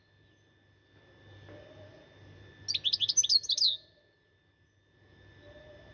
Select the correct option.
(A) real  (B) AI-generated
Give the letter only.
A